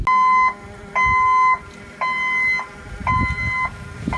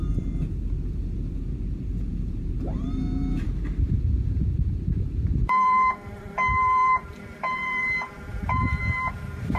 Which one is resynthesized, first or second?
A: second